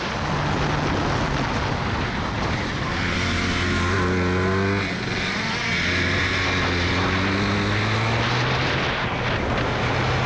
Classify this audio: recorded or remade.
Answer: recorded